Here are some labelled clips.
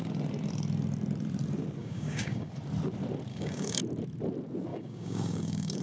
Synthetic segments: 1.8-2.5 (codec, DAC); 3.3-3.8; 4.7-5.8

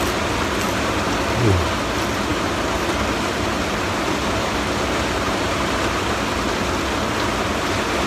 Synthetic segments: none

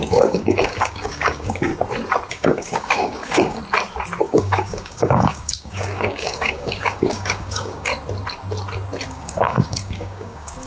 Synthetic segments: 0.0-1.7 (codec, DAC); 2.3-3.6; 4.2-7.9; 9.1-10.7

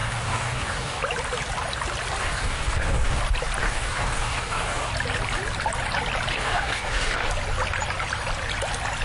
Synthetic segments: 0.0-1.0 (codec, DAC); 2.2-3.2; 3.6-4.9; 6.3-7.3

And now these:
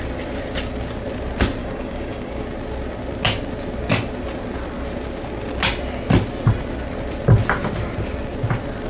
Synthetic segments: 1.6-2.4 (codec, DAC)

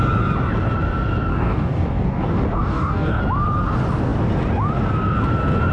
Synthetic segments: 1.3-3.2 (codec, DAC)